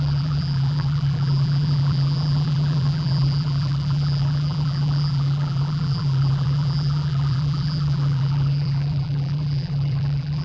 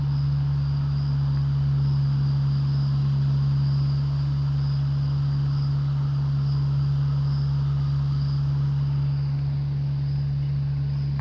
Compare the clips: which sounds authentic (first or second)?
second